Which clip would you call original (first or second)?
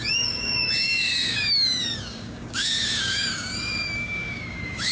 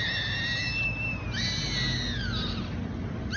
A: second